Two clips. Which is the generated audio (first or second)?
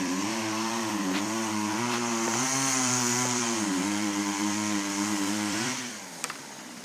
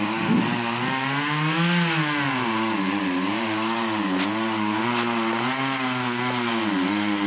first